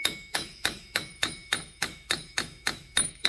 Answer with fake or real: fake